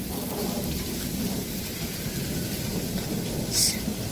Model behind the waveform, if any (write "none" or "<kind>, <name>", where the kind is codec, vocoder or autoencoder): none